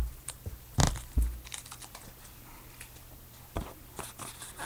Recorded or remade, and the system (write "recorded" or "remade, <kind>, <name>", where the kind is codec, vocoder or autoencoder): recorded